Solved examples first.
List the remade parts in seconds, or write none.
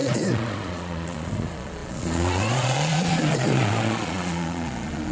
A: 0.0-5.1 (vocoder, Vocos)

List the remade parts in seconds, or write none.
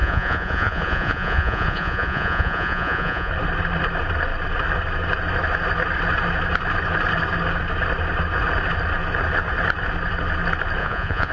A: 0.0-3.3 (vocoder, Vocos); 10.8-11.3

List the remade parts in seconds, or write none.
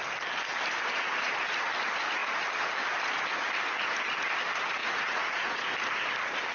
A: 4.8-5.7 (vocoder, Vocos)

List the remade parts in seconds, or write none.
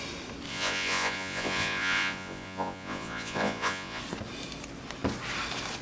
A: 0.5-4.0 (vocoder, Vocos)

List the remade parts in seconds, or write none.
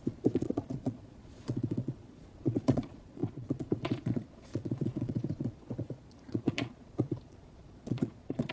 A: 0.0-8.5 (vocoder, Vocos)